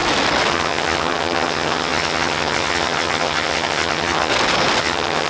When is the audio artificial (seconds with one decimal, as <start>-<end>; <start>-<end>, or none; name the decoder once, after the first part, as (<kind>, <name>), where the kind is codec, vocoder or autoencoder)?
0.5-4.3 (vocoder, HiFi-GAN); 4.8-5.3